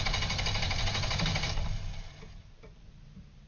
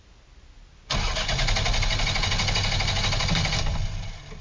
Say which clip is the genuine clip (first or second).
second